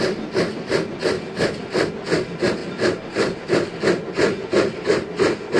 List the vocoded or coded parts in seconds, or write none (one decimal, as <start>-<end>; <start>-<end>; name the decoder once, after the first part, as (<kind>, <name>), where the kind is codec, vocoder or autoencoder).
none